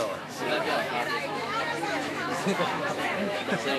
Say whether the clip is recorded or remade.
remade